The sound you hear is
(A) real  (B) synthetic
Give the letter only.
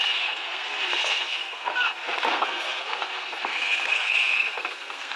B